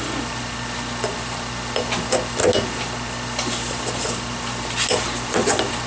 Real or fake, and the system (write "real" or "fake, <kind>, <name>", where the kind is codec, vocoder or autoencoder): real